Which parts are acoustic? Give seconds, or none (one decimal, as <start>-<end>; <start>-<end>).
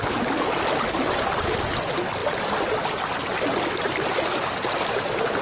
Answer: 0.0-5.4